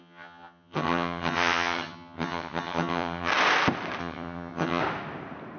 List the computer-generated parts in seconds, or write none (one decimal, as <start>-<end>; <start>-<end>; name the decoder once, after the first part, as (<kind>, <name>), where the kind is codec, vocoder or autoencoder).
0.0-3.3 (vocoder, HiFi-GAN); 4.0-4.8